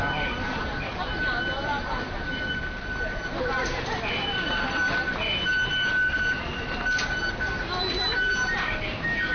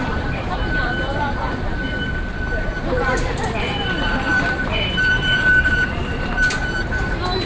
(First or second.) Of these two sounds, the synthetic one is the second